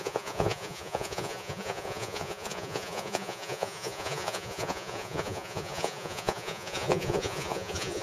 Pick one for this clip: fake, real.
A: fake